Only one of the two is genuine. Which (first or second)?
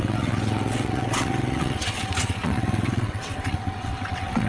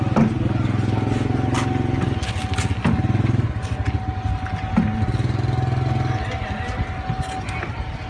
second